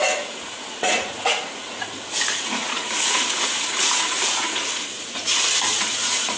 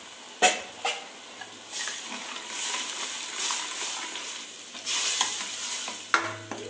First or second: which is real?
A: second